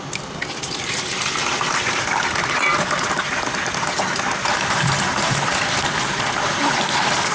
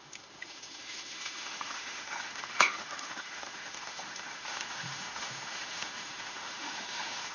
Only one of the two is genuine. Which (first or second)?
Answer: first